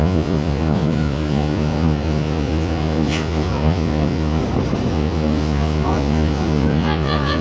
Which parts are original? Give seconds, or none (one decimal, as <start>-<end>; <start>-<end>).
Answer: 4.4-4.9

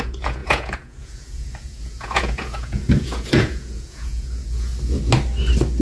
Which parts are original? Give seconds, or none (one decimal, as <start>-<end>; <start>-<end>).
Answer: 4.7-5.8

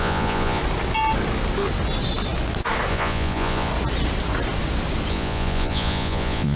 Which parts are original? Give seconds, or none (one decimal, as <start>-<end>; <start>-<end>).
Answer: 0.6-2.9; 3.7-5.1

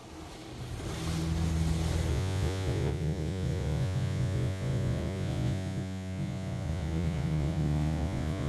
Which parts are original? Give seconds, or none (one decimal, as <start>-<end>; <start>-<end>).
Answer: 0.0-2.1

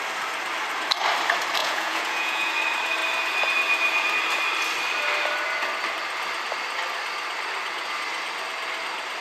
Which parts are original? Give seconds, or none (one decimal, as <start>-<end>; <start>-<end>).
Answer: 0.0-1.6; 2.5-9.2

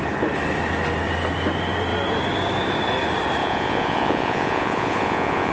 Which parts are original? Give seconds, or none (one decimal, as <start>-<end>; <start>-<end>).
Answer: 0.0-3.4

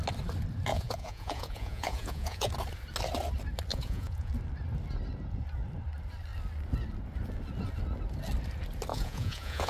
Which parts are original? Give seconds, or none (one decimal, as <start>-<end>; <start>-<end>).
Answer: 0.0-0.7; 2.5-3.7; 4.3-8.9

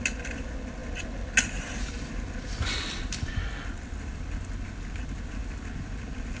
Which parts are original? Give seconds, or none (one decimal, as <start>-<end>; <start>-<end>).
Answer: 0.0-6.4